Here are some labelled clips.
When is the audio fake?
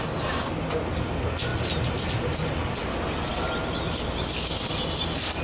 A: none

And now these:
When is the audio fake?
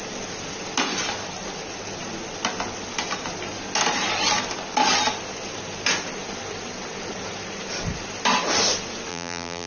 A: 9.1-9.7 (vocoder, BigVGAN v2)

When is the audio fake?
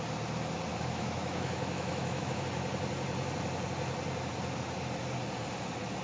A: 0.7-2.4 (autoencoder, DAC-VAE)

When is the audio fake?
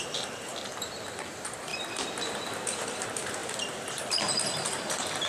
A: 0.0-0.5 (vocoder, BigVGAN v2); 1.1-5.3